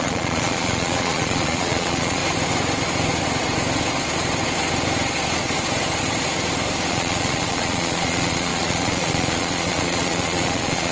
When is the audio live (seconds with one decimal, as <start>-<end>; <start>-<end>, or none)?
2.2-6.9